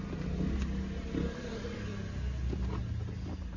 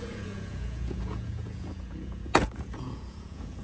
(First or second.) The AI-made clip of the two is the second